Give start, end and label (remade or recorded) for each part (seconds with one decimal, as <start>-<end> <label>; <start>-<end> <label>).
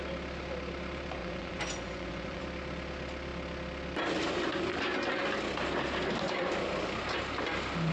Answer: 0.0-1.2 recorded; 1.2-2.4 remade; 2.4-7.9 recorded